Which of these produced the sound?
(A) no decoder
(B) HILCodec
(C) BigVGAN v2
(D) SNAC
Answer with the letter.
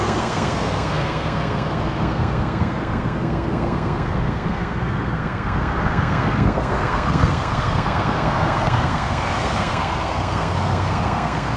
D